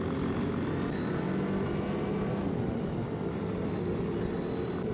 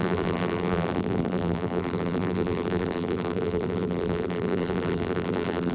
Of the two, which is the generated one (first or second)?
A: second